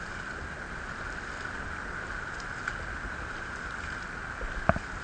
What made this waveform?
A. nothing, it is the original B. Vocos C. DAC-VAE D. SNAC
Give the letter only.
A